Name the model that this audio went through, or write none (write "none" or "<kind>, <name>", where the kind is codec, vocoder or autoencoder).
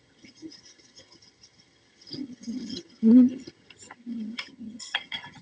vocoder, HiFi-GAN